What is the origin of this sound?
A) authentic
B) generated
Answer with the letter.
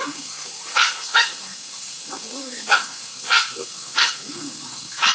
B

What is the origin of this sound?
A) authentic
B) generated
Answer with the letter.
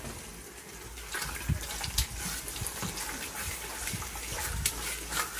A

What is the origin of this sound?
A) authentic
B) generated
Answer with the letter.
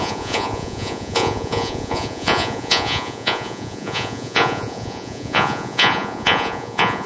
B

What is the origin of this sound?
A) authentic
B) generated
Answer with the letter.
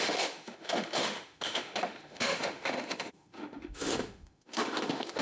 B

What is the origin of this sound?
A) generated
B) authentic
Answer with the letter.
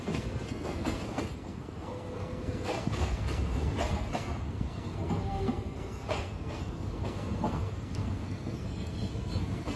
A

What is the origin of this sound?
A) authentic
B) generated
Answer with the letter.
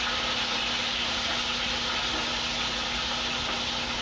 A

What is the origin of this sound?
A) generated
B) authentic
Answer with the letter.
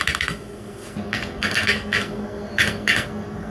A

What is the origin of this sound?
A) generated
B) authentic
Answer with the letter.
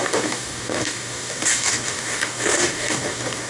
A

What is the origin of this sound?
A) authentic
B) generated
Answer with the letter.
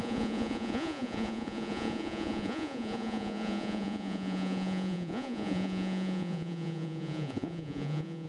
B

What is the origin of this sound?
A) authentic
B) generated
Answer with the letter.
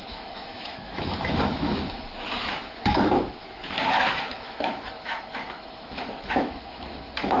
B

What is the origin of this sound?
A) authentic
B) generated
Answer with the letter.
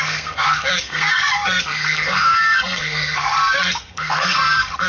B